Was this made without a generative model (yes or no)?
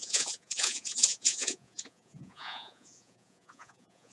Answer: no